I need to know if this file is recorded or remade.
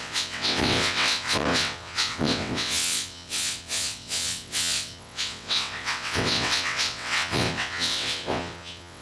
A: remade